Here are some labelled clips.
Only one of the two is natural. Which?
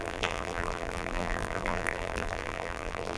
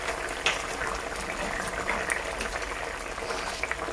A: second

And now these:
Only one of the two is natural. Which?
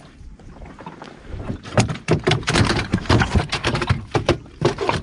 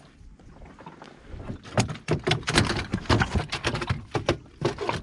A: second